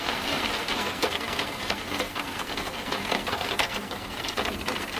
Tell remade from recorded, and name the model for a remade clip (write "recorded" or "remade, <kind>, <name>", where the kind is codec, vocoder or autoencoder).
remade, codec, SNAC